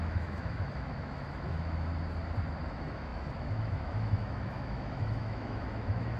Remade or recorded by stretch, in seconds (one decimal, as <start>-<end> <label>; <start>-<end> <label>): 0.0-1.9 remade; 1.9-2.7 recorded; 2.7-6.2 remade